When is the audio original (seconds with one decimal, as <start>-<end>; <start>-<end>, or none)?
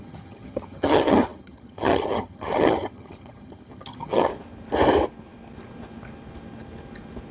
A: 4.3-7.3